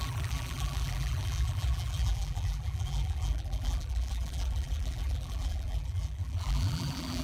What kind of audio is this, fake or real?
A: fake